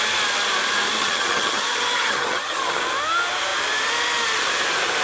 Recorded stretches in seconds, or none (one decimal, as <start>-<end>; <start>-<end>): 0.0-1.0; 2.8-5.0